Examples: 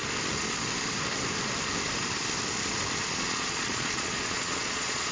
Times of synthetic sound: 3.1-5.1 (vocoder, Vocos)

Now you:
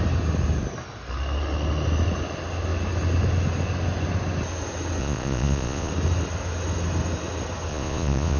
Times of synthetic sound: 5.0-5.9 (vocoder, Vocos); 7.7-8.4

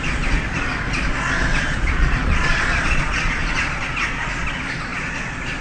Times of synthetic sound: 1.5-3.6 (vocoder, Vocos)